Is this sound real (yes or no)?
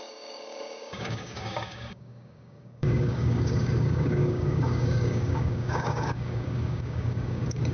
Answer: no